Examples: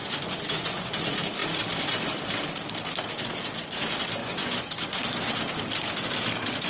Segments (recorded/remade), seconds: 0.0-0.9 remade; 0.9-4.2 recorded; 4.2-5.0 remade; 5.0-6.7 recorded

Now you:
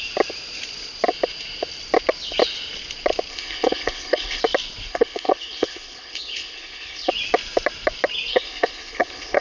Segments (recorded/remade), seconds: 0.0-3.3 recorded; 3.3-4.4 remade; 4.4-4.9 recorded; 4.9-7.1 remade; 7.1-8.3 recorded; 8.3-9.4 remade

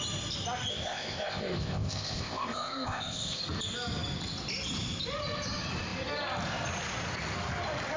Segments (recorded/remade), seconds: 0.0-0.7 recorded; 0.7-3.4 remade; 3.4-8.0 recorded

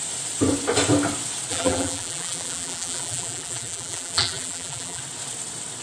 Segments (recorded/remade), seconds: 0.0-1.5 recorded; 1.5-5.0 remade; 5.0-5.8 recorded

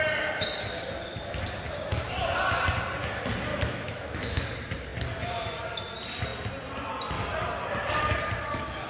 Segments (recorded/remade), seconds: 0.0-3.5 recorded; 3.5-4.4 remade; 4.4-8.9 recorded

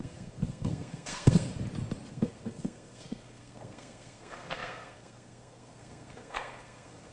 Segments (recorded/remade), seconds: 0.0-1.5 remade; 1.5-2.1 recorded; 2.1-7.1 remade

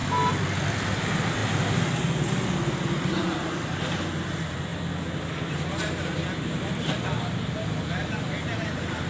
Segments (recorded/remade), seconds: 0.0-0.6 recorded; 0.6-1.4 remade; 1.4-3.0 recorded; 3.0-4.7 remade; 4.7-9.1 recorded